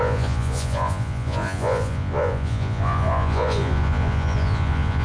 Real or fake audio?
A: fake